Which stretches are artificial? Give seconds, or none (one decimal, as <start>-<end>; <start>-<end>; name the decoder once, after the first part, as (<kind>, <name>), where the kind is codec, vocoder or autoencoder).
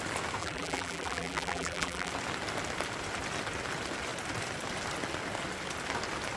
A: 0.4-2.1 (vocoder, BigVGAN v2)